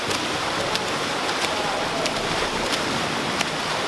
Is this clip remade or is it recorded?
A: recorded